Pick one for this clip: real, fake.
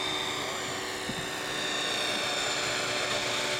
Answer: real